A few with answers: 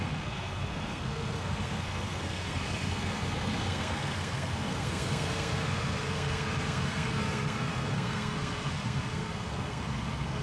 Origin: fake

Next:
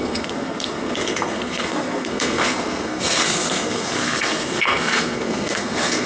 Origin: fake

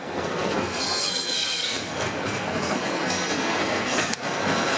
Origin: fake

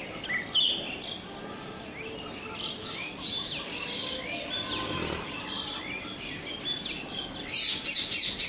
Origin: real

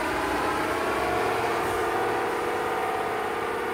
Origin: real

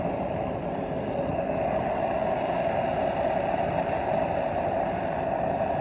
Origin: real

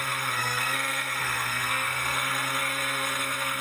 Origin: fake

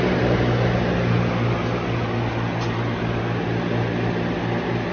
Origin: real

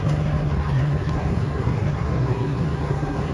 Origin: fake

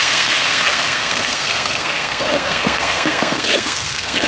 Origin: fake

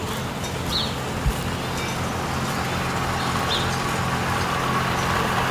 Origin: real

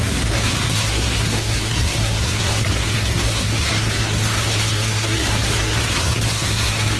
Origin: fake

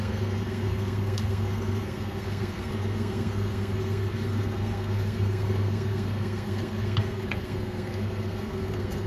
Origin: fake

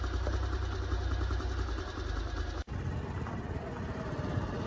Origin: real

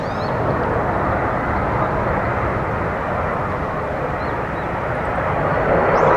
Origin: real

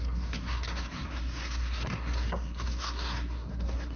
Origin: fake